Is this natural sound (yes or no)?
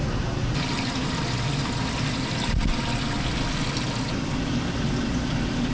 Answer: yes